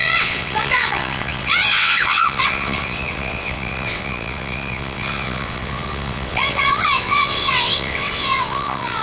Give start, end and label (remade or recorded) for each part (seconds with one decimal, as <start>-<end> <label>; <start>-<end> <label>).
0.0-9.0 remade